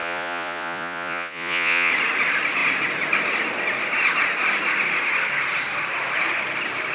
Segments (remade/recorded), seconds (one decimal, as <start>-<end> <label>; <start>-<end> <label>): 0.0-1.9 remade; 1.9-6.9 recorded